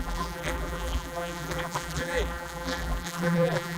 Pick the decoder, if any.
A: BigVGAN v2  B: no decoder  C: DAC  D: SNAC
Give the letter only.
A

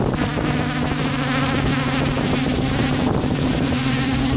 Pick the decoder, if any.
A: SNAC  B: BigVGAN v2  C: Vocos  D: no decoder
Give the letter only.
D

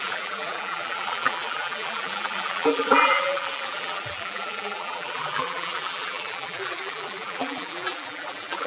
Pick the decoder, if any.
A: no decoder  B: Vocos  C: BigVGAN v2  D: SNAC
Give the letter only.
C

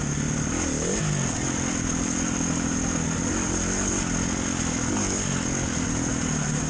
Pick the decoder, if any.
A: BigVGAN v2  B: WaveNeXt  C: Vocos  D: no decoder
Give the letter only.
D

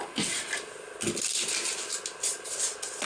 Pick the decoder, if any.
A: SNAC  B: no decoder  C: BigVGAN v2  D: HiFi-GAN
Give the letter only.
B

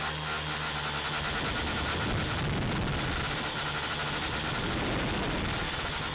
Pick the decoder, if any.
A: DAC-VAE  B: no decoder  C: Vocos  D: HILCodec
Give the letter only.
B